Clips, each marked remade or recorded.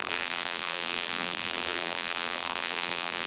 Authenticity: remade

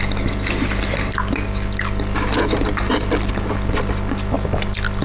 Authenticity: recorded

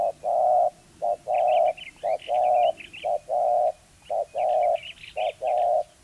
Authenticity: recorded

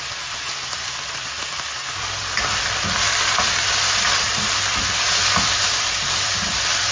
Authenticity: remade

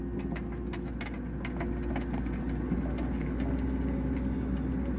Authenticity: recorded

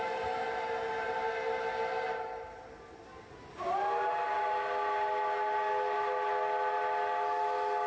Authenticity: recorded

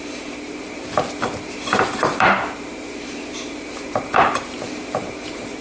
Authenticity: remade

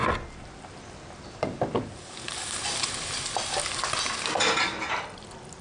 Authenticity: recorded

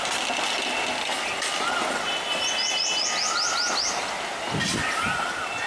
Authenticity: recorded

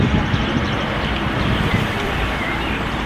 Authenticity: remade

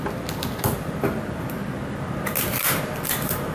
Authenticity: recorded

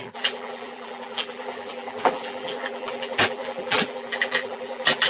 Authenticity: remade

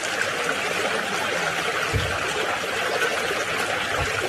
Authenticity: recorded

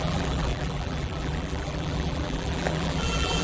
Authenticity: remade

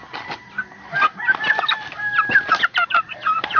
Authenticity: remade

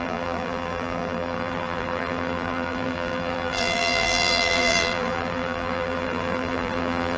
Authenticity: remade